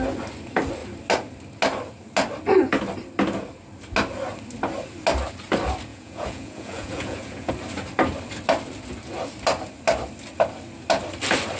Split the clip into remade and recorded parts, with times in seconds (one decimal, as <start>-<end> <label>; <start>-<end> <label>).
0.0-5.9 recorded; 5.9-7.5 remade; 7.5-11.6 recorded